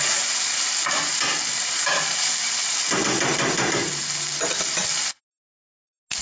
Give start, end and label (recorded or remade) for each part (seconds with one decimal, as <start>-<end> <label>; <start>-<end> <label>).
0.0-6.2 recorded